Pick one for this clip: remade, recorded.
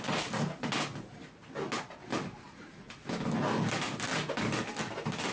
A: recorded